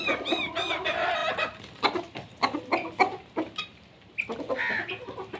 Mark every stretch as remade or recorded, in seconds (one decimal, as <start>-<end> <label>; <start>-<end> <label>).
0.0-5.4 recorded